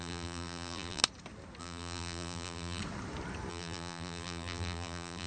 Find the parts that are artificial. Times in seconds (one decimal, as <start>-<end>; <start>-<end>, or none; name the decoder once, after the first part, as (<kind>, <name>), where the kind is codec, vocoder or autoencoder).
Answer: 0.0-1.0 (vocoder, BigVGAN v2); 1.6-2.8; 3.5-5.3